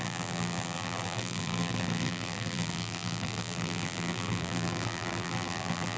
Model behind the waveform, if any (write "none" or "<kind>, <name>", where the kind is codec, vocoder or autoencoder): vocoder, BigVGAN v2